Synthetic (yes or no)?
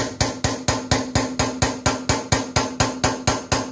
no